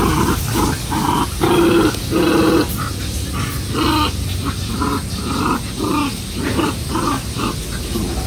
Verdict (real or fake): real